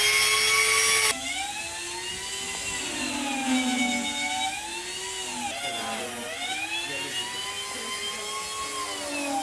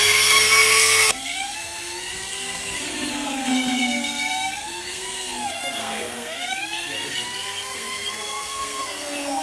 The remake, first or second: second